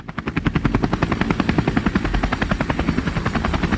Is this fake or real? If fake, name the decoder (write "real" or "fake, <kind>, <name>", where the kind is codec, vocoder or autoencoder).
real